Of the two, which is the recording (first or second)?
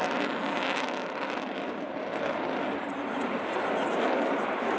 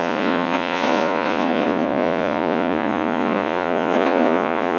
first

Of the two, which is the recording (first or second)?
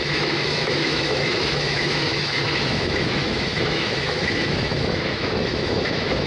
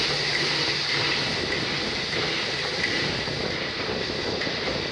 second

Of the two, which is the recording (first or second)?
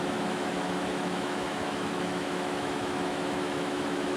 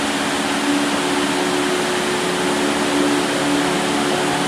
second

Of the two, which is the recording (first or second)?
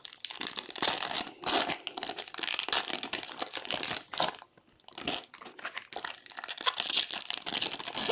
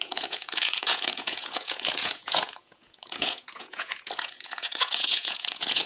first